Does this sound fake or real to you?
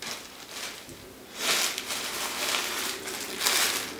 real